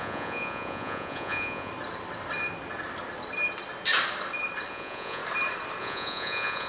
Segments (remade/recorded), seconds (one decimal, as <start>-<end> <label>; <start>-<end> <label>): 0.0-1.7 remade; 1.7-4.7 recorded; 4.7-5.2 remade; 5.2-5.8 recorded; 5.8-6.7 remade